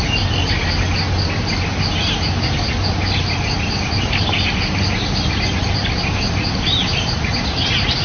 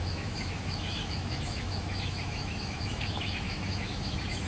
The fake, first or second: second